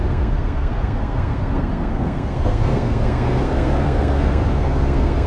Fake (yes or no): yes